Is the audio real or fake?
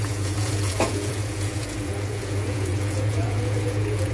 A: fake